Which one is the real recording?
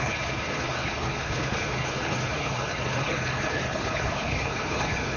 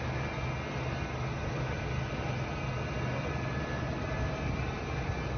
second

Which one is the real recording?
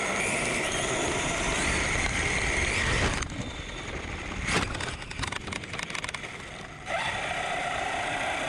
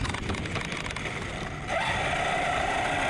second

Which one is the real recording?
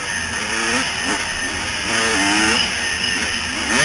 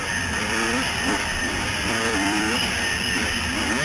first